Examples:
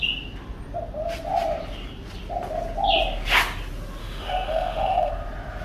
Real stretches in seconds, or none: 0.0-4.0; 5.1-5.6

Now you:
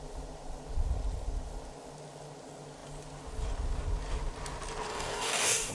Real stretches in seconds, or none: 0.0-4.9

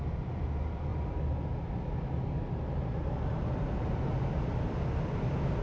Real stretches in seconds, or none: 0.0-5.6

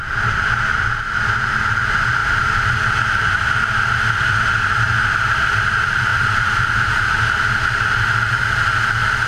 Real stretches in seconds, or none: 0.0-6.1; 7.1-9.3

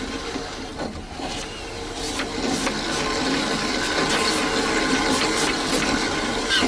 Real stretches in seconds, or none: 0.0-6.7